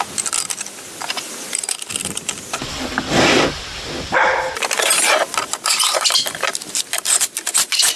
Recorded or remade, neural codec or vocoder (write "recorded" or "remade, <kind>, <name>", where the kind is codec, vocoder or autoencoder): recorded